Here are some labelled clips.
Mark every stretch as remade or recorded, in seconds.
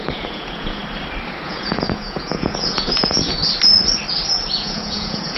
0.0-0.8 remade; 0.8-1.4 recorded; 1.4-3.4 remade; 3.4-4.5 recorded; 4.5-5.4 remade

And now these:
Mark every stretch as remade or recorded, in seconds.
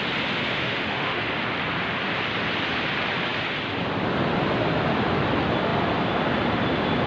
0.0-0.5 recorded; 0.5-1.3 remade; 1.3-7.1 recorded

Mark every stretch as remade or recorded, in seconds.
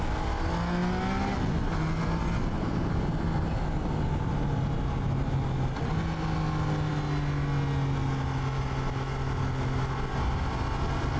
0.0-11.2 recorded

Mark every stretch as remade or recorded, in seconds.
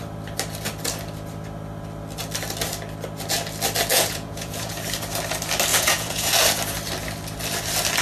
0.0-3.9 recorded; 3.9-4.7 remade; 4.7-5.7 recorded; 5.7-6.3 remade; 6.3-8.0 recorded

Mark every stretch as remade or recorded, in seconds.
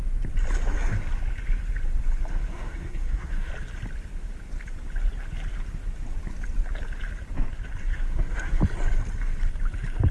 0.0-2.3 recorded; 2.3-3.5 remade; 3.5-7.8 recorded; 7.8-8.6 remade; 8.6-10.1 recorded